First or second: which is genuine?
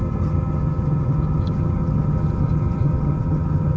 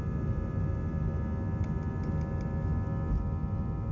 second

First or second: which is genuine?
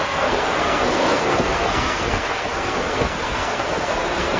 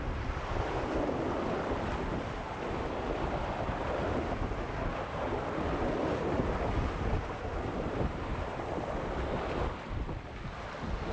second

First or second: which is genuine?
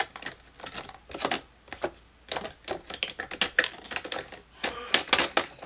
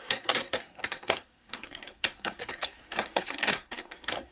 first